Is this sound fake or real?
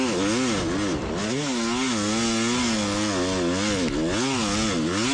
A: real